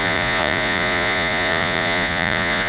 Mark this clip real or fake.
fake